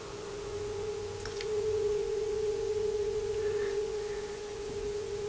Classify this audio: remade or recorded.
remade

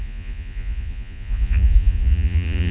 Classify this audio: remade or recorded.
remade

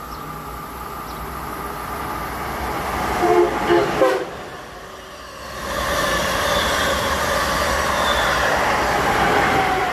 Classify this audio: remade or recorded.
recorded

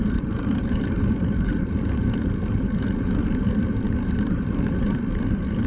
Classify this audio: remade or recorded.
remade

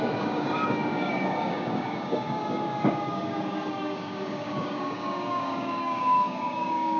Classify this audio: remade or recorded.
remade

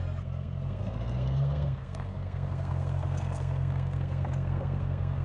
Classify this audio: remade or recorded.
remade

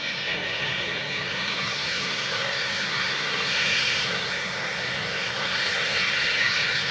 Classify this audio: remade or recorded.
remade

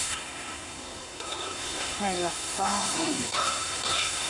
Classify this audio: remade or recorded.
remade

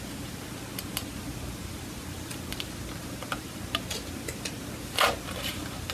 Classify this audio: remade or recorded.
recorded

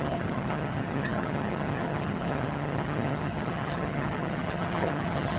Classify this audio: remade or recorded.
remade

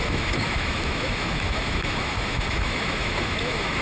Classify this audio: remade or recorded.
remade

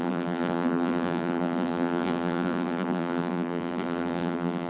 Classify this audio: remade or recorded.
remade